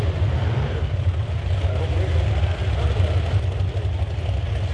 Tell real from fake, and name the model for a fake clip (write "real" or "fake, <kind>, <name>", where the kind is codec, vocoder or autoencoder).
real